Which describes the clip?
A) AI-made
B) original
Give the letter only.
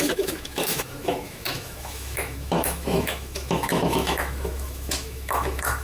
A